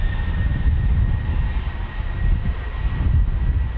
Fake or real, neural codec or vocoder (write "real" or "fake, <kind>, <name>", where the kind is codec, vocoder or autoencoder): real